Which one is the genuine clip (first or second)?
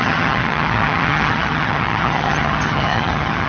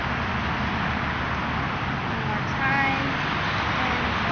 second